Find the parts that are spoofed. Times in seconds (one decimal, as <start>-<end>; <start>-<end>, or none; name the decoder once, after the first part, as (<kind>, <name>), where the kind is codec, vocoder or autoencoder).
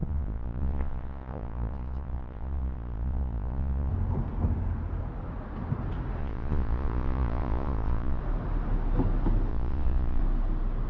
0.0-3.9 (vocoder, Vocos); 6.2-8.2; 9.5-10.2